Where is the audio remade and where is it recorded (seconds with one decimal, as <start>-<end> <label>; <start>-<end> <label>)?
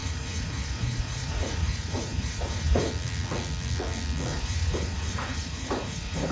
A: 0.0-2.9 remade; 2.9-4.3 recorded; 4.3-6.3 remade